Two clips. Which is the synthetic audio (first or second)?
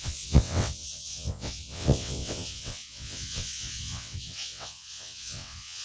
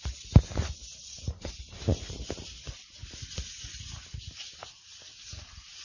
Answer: first